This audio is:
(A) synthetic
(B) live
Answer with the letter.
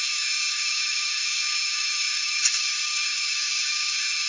A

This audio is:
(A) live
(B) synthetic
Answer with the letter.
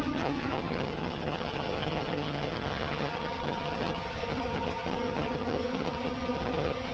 B